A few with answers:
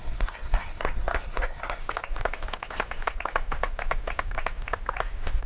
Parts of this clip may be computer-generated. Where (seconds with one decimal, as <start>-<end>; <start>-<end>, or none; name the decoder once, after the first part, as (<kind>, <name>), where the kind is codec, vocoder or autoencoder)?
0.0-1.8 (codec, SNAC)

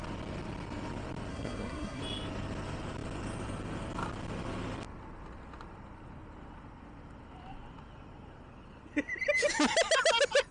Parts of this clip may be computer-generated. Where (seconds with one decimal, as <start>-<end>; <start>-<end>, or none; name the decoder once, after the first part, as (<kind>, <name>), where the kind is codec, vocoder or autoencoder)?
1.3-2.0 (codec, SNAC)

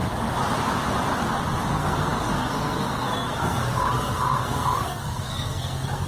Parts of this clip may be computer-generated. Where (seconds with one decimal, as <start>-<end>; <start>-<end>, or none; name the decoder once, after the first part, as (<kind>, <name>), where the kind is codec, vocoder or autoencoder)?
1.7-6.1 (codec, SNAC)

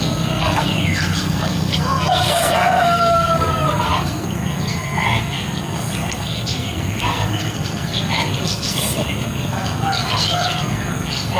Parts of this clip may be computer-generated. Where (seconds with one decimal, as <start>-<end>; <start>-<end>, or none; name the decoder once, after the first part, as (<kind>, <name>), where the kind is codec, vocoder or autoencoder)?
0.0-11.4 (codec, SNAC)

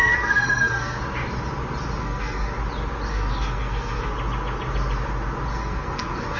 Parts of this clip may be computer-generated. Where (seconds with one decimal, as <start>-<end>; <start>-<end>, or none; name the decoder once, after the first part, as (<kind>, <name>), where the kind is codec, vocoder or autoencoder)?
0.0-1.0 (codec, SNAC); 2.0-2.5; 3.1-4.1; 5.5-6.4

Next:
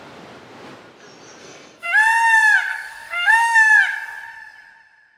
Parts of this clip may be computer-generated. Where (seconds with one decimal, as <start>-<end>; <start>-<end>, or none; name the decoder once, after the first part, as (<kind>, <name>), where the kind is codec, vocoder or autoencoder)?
1.4-1.9 (codec, SNAC); 2.7-3.7

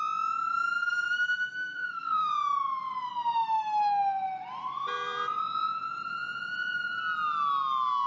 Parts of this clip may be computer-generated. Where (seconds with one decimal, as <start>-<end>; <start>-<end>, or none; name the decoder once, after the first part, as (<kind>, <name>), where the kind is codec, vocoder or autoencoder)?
0.8-2.3 (codec, SNAC)